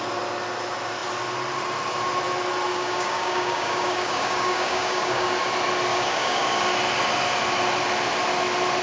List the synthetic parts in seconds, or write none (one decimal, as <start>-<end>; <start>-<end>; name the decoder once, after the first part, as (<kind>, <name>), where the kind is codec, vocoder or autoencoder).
2.7-5.3 (codec, DAC); 5.9-6.6